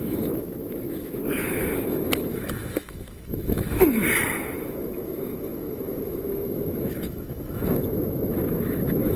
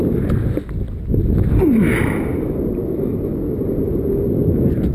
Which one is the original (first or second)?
second